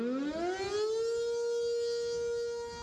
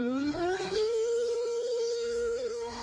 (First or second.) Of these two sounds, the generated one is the second